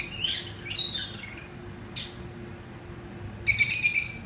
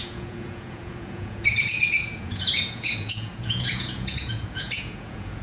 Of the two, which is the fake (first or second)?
second